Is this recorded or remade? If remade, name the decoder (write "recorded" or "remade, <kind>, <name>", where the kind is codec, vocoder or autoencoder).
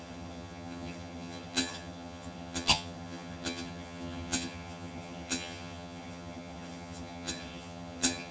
remade, vocoder, HiFi-GAN